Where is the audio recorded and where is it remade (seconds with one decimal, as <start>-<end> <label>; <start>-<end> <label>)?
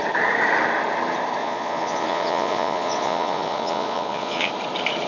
0.0-1.4 recorded; 1.4-4.5 remade; 4.5-5.1 recorded